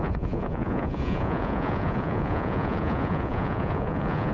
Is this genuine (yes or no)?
no